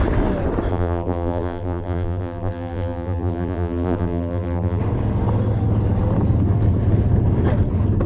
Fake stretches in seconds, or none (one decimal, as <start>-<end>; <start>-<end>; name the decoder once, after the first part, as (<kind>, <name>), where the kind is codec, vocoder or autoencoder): 0.7-4.8 (vocoder, BigVGAN v2)